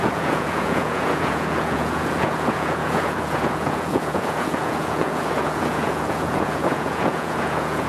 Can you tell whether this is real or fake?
fake